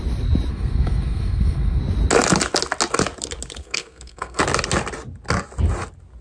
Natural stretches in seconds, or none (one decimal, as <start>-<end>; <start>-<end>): 0.0-0.5; 1.8-3.6; 4.4-6.2